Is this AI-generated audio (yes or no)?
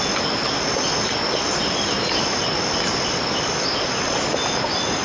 no